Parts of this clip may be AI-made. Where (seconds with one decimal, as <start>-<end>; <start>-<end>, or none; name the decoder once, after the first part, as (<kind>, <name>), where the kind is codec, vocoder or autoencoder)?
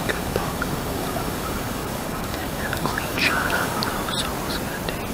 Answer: 0.0-3.9 (codec, DAC)